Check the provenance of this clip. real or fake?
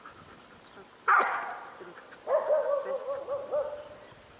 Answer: real